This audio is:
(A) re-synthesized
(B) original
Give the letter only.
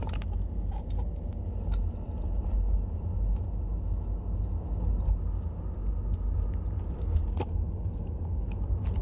B